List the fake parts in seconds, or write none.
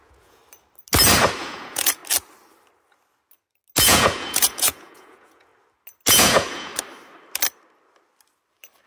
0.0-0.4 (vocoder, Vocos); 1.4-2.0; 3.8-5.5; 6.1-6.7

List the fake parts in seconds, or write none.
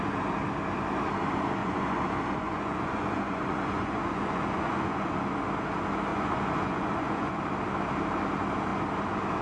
1.6-5.1 (vocoder, Vocos); 6.1-7.4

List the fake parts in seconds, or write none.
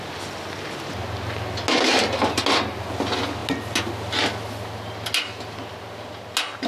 none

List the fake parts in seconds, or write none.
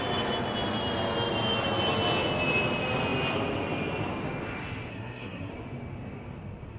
4.9-5.5 (codec, SNAC)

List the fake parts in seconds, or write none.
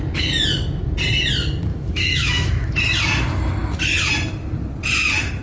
1.7-2.7 (autoencoder, DAC-VAE)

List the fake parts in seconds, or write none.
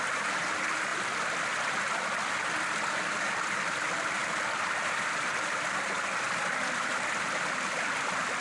none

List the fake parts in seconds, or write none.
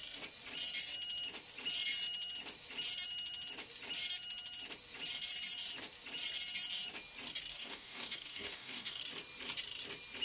7.5-9.0 (codec, DAC)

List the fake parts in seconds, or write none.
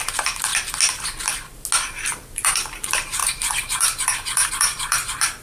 0.0-0.5 (vocoder, BigVGAN v2); 2.1-5.4